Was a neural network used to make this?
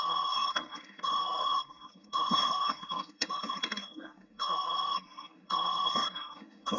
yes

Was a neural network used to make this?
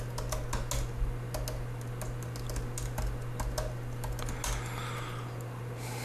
no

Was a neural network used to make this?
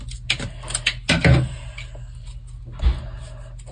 no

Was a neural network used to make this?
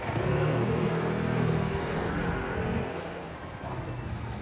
yes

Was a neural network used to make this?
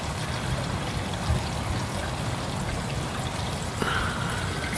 no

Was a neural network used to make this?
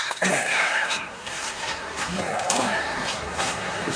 yes